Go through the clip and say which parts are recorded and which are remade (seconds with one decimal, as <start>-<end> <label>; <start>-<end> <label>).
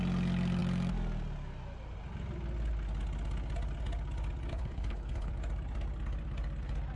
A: 0.0-4.5 recorded; 4.5-5.3 remade; 5.3-7.0 recorded